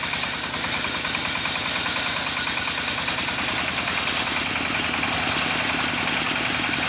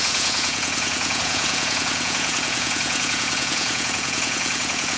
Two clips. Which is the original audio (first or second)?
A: first